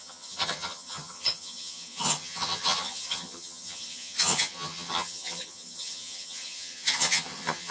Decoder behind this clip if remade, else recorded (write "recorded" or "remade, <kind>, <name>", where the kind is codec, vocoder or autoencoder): remade, vocoder, HiFi-GAN